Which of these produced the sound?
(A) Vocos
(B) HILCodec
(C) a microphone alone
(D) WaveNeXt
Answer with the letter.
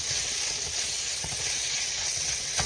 D